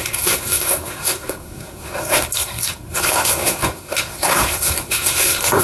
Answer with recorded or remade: remade